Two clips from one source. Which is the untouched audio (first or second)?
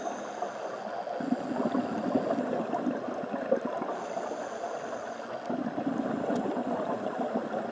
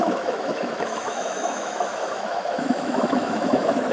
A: first